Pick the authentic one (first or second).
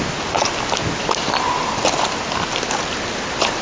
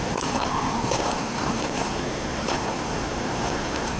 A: first